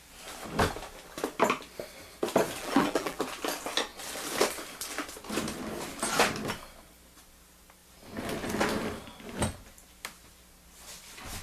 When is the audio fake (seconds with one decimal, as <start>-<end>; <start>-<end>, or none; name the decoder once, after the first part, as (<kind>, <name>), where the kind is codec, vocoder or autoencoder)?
2.6-3.2 (vocoder, BigVGAN v2)